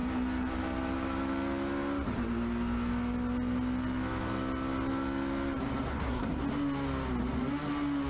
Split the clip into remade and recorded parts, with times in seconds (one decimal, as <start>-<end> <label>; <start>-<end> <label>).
0.0-5.9 recorded; 5.9-6.4 remade; 6.4-8.1 recorded

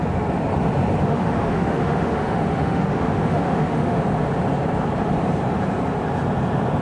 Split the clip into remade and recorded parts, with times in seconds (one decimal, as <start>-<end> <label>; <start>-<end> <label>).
0.0-1.0 recorded; 1.0-4.0 remade; 4.0-6.8 recorded

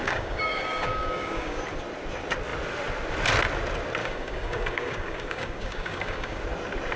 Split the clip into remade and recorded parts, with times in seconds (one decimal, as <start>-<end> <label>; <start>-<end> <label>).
0.0-1.6 remade; 1.6-4.0 recorded; 4.0-6.4 remade; 6.4-7.0 recorded